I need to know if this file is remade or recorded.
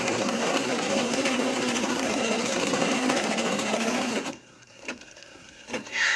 remade